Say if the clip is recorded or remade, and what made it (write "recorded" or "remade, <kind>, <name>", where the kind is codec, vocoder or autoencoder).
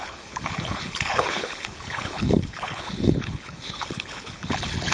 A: remade, codec, HILCodec